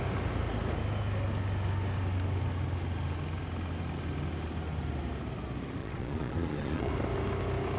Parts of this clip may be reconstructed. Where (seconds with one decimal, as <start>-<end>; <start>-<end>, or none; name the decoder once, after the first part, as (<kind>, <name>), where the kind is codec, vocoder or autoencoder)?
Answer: 5.8-6.9 (vocoder, Vocos)